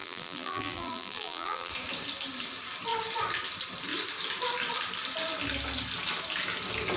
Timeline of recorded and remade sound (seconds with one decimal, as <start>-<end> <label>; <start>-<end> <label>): 0.0-1.7 remade; 1.7-7.0 recorded